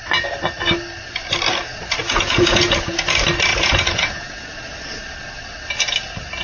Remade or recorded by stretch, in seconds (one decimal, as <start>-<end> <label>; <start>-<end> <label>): 0.0-2.0 recorded; 2.0-3.0 remade; 3.0-3.5 recorded; 3.5-4.5 remade; 4.5-6.4 recorded